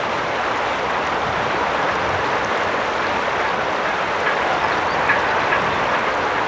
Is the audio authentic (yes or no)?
yes